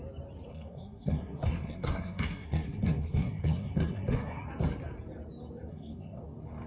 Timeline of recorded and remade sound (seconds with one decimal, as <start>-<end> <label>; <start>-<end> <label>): 0.0-0.5 recorded; 0.5-4.5 remade; 4.5-5.7 recorded; 5.7-6.2 remade; 6.2-6.7 recorded